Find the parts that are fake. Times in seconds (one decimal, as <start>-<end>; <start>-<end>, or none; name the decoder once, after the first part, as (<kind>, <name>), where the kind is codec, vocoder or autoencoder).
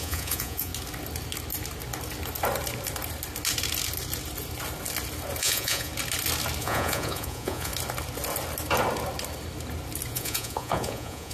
0.0-0.7 (vocoder, Vocos); 5.4-5.9; 6.6-7.7; 10.1-11.3